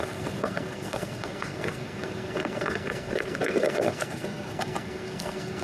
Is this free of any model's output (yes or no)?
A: no